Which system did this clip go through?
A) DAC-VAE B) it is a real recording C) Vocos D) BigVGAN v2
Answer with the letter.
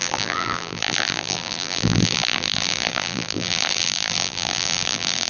D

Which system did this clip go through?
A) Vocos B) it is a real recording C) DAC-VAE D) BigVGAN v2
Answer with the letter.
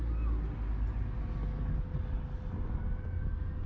B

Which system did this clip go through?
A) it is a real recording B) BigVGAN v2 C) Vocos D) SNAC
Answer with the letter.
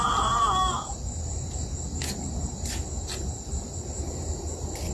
A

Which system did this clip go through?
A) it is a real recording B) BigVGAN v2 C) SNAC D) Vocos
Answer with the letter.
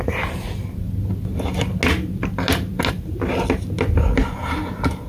A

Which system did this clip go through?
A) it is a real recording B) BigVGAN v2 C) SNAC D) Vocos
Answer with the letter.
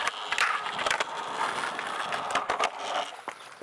A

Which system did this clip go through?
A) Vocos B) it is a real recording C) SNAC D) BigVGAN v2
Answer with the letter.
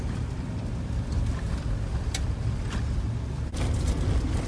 B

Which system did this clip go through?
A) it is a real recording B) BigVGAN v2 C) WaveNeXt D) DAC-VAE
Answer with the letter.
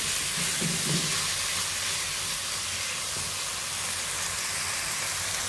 A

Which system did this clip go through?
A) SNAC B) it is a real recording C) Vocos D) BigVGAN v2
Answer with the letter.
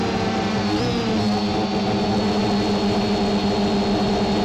B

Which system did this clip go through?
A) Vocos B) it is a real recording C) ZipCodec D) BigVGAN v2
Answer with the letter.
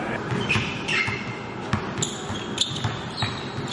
B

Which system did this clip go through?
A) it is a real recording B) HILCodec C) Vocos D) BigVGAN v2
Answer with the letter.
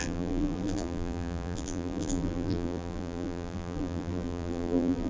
D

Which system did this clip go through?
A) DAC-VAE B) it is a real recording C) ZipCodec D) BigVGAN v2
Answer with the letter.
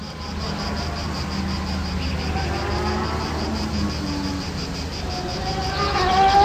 B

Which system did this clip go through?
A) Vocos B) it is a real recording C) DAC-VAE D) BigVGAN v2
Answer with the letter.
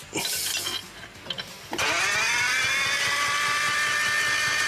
B